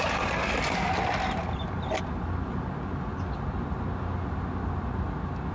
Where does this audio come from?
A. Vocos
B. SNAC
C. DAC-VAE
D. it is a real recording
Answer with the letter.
D